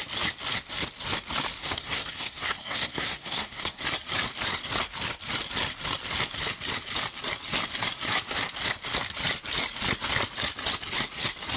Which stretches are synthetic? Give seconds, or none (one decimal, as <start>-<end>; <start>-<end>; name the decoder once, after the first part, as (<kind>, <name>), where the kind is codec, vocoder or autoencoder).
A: 1.6-3.8 (codec, SNAC)